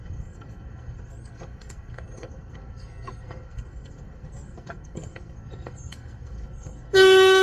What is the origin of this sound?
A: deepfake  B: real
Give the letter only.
A